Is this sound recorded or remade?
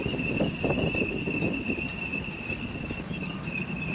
recorded